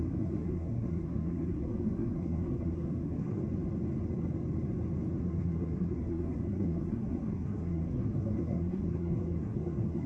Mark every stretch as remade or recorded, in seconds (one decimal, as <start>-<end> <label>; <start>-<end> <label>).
0.0-3.4 remade; 3.4-5.2 recorded; 5.2-10.1 remade

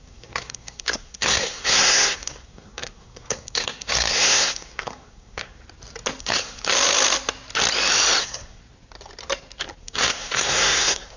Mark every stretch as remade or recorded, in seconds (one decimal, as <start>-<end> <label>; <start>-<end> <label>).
0.0-5.6 remade; 5.6-6.2 recorded; 6.2-6.7 remade; 6.7-8.2 recorded; 8.2-8.6 remade; 8.6-9.8 recorded; 9.8-11.2 remade